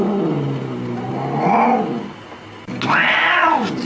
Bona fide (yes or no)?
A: yes